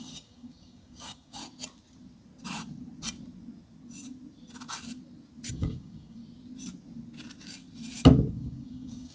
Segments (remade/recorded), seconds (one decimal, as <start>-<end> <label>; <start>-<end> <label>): 0.0-1.4 remade; 1.4-5.5 recorded; 5.5-6.2 remade; 6.2-8.3 recorded; 8.3-9.1 remade